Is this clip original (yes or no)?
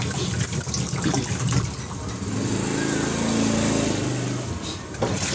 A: yes